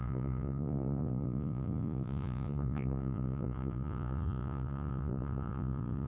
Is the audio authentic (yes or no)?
no